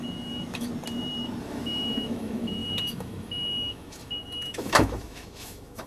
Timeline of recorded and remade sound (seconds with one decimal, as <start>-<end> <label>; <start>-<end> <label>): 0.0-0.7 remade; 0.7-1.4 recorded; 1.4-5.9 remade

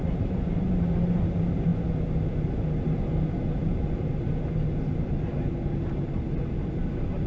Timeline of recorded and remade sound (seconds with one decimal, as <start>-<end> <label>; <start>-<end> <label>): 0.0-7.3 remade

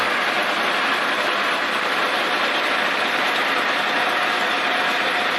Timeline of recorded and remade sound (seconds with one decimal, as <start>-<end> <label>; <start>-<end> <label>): 0.0-5.4 recorded